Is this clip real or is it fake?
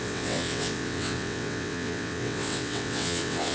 fake